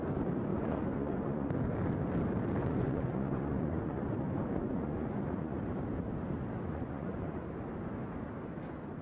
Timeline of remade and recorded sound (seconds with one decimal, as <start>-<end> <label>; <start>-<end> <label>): 0.0-0.5 recorded; 0.5-1.5 remade; 1.5-2.6 recorded; 2.6-5.6 remade; 5.6-6.7 recorded; 6.7-7.5 remade; 7.5-9.0 recorded